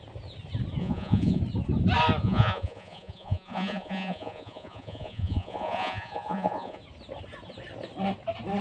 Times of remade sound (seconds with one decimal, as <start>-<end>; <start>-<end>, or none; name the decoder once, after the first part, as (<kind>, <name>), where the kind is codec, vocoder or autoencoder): 0.8-1.4 (vocoder, Vocos); 2.2-6.8